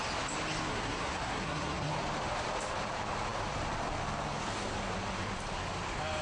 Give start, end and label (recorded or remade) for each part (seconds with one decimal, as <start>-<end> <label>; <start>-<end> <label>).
0.0-0.7 recorded; 0.7-1.9 remade; 1.9-6.2 recorded